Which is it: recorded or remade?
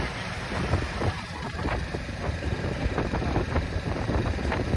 remade